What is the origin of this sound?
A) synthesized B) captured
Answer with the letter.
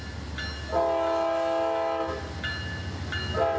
B